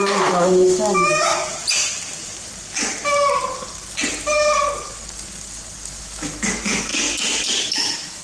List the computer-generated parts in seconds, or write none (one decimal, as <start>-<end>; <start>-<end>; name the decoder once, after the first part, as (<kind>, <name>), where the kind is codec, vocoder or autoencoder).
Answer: 0.0-1.3 (autoencoder, DAC-VAE); 5.9-6.9; 7.6-8.2